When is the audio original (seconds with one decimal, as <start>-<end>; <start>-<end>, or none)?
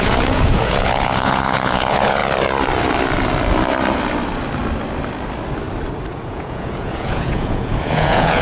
2.2-6.1